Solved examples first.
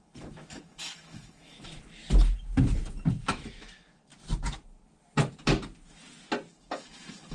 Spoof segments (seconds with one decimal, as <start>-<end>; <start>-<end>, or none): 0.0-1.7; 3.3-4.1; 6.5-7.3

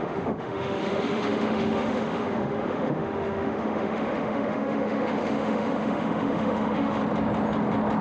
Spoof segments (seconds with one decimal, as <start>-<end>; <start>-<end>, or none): 0.0-7.0

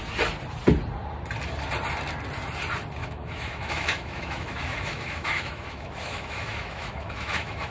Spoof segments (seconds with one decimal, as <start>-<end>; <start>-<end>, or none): 3.0-7.7

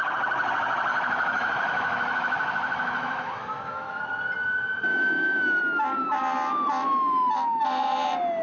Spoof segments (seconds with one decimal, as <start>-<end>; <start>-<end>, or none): 0.9-4.0; 4.9-5.6

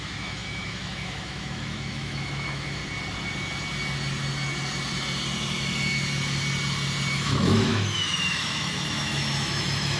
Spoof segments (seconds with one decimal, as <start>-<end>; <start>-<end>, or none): 0.0-2.8; 7.1-10.0